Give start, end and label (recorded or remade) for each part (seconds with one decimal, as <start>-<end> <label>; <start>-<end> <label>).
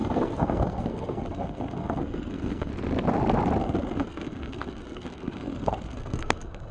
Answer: 0.0-2.7 remade; 2.7-3.6 recorded; 3.6-6.7 remade